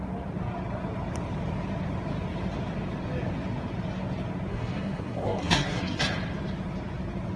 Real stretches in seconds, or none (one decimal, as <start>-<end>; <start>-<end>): 0.0-4.5; 6.0-7.4